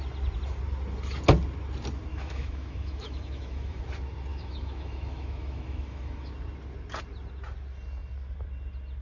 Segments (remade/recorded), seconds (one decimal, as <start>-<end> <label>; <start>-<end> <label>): 0.0-2.1 recorded; 2.1-3.8 remade; 3.8-4.3 recorded; 4.3-6.3 remade; 6.3-9.0 recorded